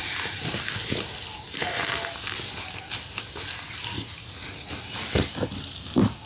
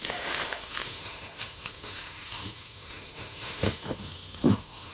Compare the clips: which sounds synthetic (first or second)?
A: second